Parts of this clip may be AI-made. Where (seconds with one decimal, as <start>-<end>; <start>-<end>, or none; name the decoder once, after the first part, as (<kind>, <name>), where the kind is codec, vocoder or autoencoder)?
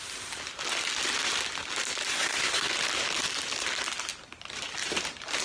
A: 2.1-2.7 (codec, SNAC)